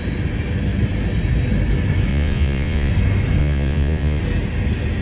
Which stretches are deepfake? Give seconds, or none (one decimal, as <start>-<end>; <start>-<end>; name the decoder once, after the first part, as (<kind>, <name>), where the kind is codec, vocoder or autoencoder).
2.1-2.9 (vocoder, Vocos); 3.4-4.2